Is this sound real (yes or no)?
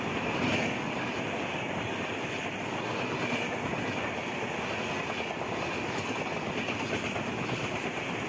yes